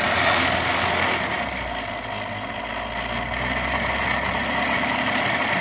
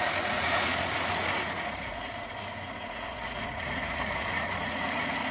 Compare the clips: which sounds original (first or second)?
first